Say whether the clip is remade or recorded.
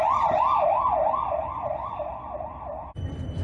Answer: recorded